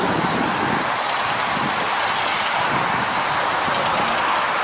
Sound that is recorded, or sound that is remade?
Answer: recorded